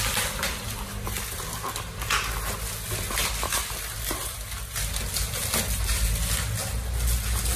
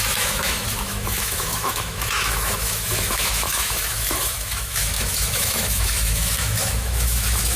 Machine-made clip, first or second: second